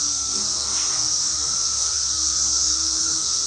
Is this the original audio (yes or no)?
no